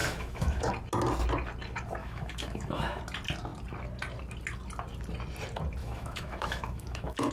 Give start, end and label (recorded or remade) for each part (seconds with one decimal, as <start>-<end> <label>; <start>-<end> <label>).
0.0-0.7 remade; 0.7-2.0 recorded; 2.0-3.0 remade; 3.0-5.8 recorded; 5.8-7.3 remade